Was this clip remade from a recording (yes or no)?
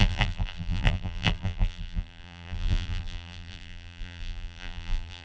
yes